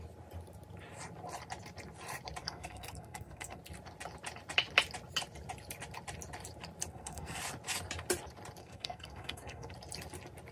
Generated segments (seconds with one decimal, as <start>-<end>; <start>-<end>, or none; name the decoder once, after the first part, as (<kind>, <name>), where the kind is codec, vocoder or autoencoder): 2.4-3.6 (codec, SNAC); 6.9-7.4; 8.6-9.7